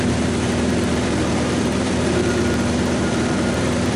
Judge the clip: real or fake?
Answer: fake